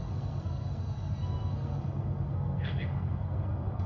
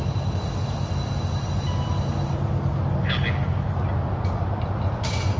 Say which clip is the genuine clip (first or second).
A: second